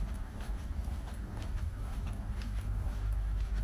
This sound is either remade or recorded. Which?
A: remade